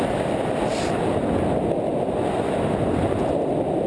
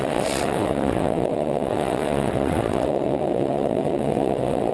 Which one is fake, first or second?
second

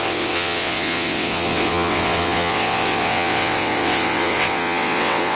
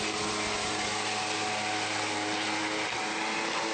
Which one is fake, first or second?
first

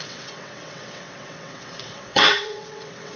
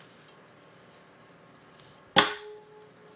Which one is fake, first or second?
first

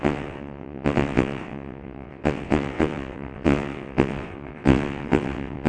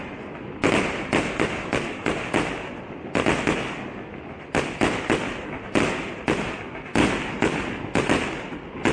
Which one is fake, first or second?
first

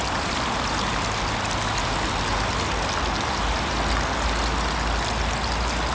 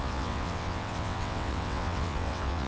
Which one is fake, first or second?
second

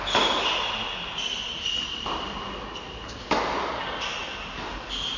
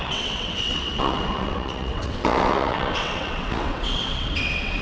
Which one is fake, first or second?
second